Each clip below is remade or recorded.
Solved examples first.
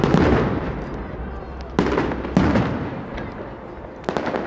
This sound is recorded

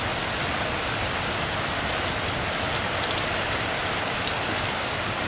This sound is recorded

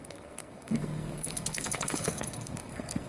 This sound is remade